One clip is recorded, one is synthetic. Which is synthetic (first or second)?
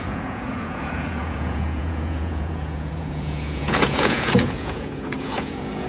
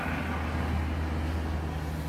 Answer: first